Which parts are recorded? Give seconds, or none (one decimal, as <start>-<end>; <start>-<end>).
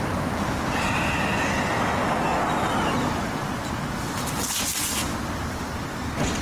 0.0-6.4